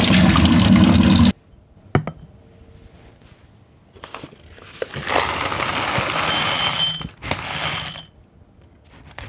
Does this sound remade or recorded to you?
recorded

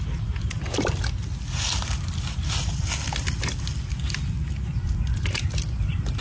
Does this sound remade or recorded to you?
recorded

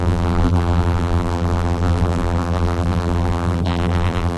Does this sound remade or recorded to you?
remade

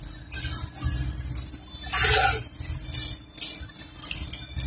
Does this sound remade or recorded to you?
recorded